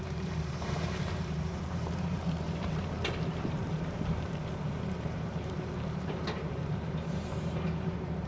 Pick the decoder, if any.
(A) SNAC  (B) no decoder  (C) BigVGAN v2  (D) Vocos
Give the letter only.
C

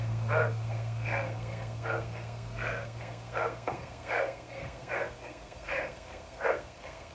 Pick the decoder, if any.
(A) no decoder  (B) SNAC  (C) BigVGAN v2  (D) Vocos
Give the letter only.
B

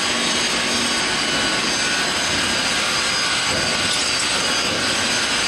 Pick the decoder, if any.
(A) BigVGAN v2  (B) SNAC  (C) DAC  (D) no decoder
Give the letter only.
D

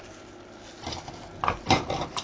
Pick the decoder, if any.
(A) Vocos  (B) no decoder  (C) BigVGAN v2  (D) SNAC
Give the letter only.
B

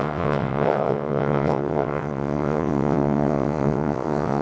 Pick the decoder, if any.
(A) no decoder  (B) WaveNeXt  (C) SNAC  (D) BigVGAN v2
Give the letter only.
B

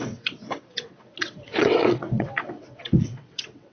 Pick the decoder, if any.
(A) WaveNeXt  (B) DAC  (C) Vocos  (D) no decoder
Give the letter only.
A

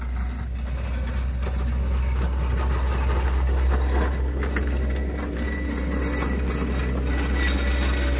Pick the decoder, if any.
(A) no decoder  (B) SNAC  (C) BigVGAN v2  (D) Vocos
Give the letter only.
A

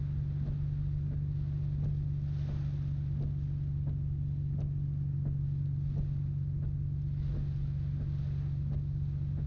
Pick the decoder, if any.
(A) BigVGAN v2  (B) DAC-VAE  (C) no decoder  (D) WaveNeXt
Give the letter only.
C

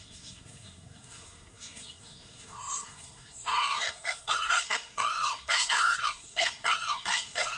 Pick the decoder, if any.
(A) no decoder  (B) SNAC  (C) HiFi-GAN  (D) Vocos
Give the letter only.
B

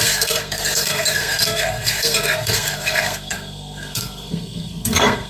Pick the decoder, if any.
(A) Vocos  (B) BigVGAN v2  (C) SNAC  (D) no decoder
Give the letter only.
C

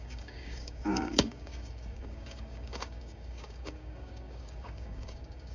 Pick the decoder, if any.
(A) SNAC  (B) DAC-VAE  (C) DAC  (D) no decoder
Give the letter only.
C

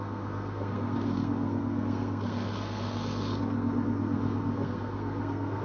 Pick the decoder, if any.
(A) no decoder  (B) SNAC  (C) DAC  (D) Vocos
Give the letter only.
B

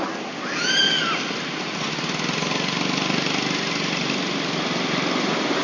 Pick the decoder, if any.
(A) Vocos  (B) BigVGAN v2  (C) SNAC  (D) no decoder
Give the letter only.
D